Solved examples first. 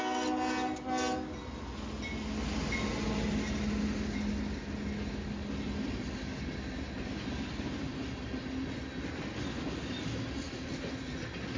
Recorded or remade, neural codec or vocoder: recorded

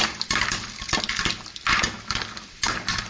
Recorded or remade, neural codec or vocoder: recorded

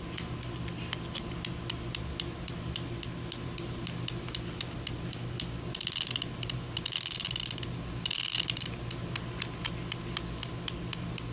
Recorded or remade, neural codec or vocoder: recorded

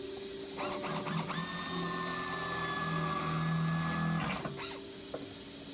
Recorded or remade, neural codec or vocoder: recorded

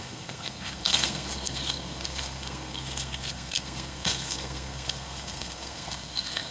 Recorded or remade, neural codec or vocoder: remade, codec, SNAC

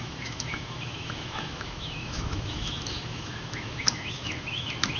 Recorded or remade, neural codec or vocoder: remade, autoencoder, DAC-VAE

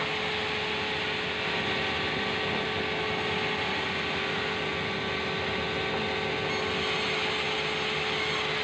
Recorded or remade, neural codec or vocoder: recorded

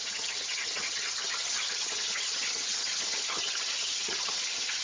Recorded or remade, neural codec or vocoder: remade, vocoder, HiFi-GAN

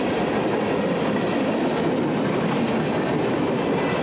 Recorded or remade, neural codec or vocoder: recorded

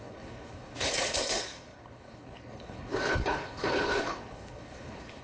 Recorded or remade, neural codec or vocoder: remade, codec, HILCodec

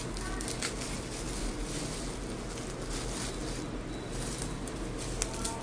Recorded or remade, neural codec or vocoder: recorded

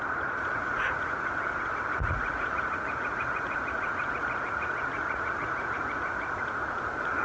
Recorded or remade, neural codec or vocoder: remade, vocoder, Vocos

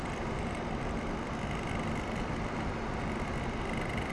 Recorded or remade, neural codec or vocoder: recorded